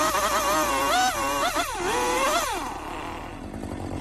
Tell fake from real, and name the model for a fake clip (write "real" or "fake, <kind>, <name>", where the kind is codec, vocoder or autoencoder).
real